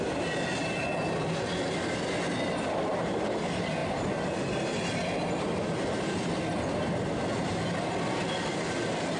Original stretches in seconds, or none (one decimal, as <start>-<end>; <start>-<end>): 0.0-9.2